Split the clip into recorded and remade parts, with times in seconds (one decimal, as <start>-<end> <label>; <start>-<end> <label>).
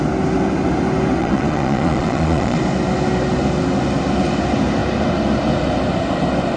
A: 0.0-1.2 recorded; 1.2-2.6 remade; 2.6-6.6 recorded